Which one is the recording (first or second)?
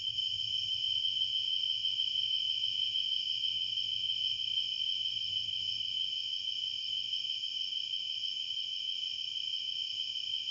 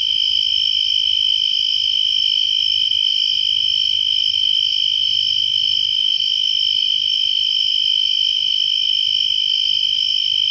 second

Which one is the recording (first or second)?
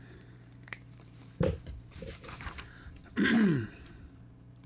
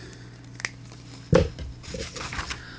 second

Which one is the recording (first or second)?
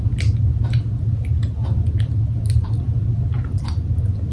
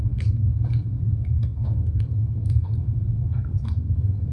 first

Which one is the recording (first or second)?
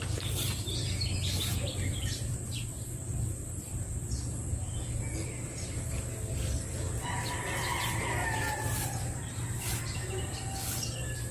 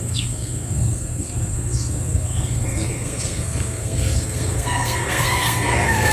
first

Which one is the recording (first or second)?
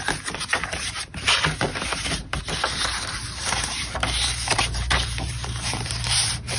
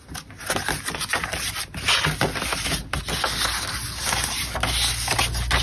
second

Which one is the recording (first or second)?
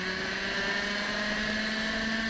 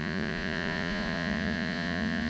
first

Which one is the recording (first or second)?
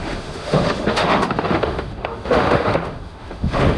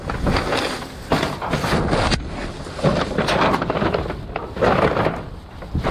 second